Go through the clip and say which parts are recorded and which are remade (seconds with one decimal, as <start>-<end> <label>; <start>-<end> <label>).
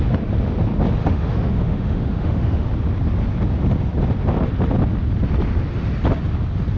0.0-1.0 recorded; 1.0-2.7 remade; 2.7-6.8 recorded